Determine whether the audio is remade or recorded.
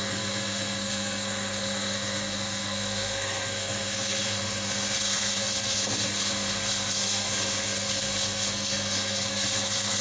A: remade